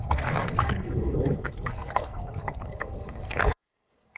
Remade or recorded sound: remade